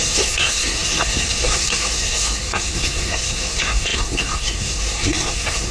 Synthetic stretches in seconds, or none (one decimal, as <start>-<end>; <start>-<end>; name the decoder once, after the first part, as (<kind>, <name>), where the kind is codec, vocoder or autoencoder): 0.0-5.7 (codec, SNAC)